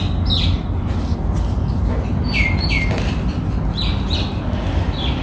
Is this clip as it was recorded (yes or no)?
yes